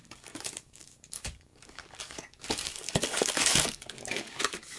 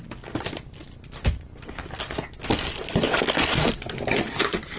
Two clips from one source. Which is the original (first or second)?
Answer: second